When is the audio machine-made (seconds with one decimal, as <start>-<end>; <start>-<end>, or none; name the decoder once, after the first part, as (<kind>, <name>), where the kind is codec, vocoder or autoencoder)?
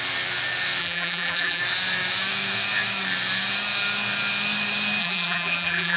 0.8-1.6 (vocoder, BigVGAN v2); 5.0-6.0